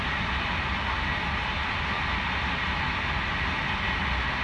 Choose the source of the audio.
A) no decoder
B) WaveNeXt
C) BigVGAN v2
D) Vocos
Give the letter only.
A